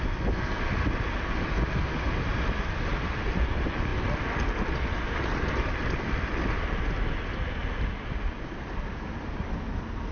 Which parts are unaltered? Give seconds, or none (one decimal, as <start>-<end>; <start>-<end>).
0.0-10.1